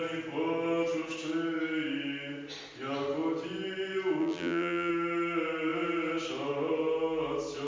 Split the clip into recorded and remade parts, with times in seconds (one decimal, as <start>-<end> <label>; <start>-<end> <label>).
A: 0.0-4.2 recorded; 4.2-4.9 remade; 4.9-7.7 recorded